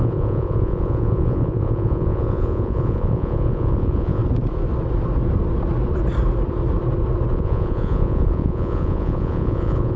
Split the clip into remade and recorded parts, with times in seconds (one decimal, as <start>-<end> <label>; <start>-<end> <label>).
0.0-4.2 remade; 4.2-7.3 recorded; 7.3-10.0 remade